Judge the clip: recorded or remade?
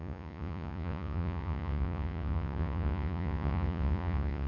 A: remade